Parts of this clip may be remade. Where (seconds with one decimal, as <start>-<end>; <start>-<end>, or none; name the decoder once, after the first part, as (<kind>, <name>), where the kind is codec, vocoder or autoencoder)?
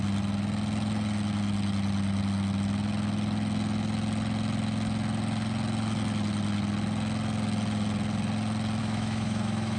8.8-9.8 (autoencoder, DAC-VAE)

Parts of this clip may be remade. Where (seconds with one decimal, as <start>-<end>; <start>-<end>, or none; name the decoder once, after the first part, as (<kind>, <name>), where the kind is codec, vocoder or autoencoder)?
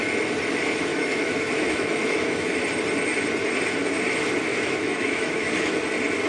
0.9-2.6 (autoencoder, DAC-VAE); 4.5-5.8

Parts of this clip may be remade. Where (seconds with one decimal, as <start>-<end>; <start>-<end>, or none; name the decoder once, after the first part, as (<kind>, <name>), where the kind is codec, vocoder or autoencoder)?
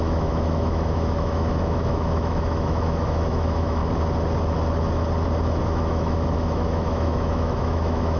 0.0-3.8 (autoencoder, DAC-VAE); 5.6-8.2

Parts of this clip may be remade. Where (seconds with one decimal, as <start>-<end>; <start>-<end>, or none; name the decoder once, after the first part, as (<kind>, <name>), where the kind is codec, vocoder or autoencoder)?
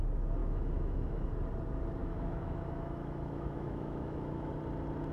0.4-1.3 (autoencoder, DAC-VAE); 2.0-4.5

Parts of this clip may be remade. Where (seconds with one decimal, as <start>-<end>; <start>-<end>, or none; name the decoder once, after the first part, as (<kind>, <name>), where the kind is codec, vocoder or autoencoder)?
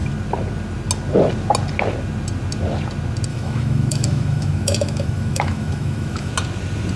3.3-6.3 (autoencoder, DAC-VAE)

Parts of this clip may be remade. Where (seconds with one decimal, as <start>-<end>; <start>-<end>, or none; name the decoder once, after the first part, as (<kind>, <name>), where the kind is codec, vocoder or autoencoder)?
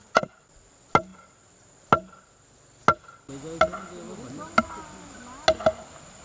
none